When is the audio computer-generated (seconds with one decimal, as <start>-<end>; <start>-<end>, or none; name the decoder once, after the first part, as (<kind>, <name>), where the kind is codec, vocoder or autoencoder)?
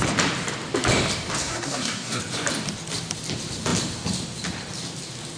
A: 1.4-2.2 (codec, SNAC)